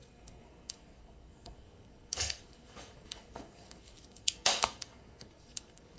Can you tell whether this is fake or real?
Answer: fake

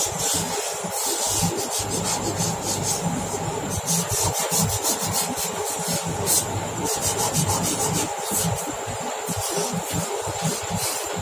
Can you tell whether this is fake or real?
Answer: real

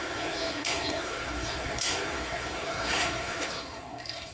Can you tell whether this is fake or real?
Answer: fake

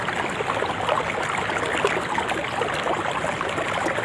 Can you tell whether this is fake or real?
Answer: real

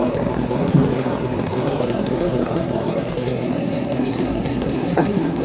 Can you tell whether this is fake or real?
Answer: fake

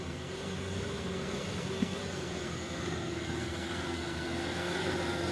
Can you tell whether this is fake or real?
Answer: fake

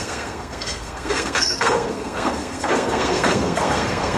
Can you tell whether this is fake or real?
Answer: fake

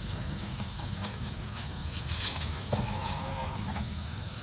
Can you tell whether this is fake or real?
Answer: fake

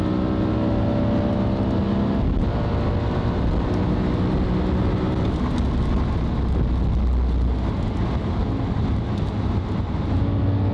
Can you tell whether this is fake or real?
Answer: real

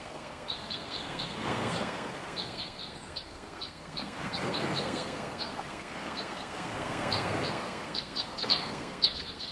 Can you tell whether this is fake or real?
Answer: fake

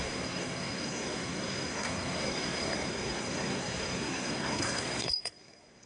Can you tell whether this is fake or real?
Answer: fake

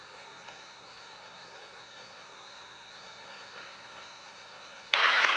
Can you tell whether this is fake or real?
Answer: fake